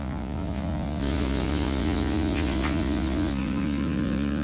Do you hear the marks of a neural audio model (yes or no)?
yes